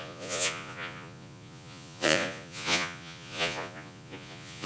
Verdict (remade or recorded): remade